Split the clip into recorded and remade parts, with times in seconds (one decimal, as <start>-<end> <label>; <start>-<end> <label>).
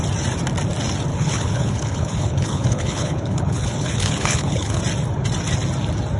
0.0-1.1 recorded; 1.1-4.8 remade; 4.8-6.2 recorded